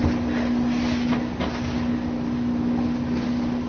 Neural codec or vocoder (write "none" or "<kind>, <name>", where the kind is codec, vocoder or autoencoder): none